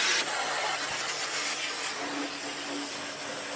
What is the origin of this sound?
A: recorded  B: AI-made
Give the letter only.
A